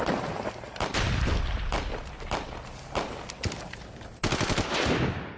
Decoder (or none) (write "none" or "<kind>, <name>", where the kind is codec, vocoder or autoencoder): vocoder, BigVGAN v2